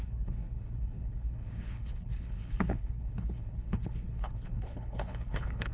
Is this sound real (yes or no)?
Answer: no